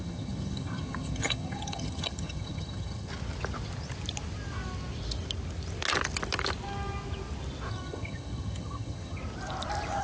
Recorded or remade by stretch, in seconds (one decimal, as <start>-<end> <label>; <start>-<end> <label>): 0.0-3.1 remade; 3.1-7.7 recorded; 7.7-9.2 remade; 9.2-10.0 recorded